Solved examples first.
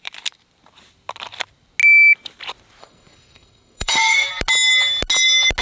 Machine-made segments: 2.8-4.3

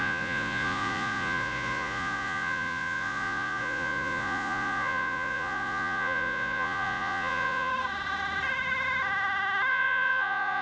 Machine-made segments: 0.0-7.7; 9.7-10.6

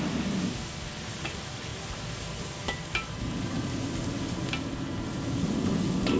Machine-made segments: none

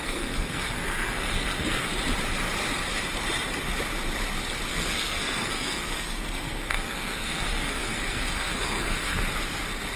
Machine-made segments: 0.0-1.9; 4.7-9.2

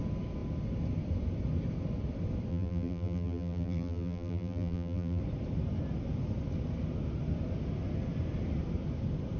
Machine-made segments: 2.5-5.2

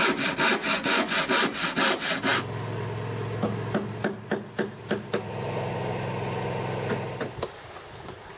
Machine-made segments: 0.6-1.2

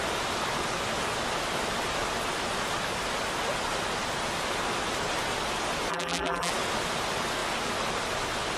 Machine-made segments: 5.9-6.5